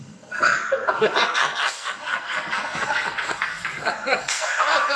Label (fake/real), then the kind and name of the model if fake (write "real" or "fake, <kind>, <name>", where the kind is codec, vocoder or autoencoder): fake, codec, SNAC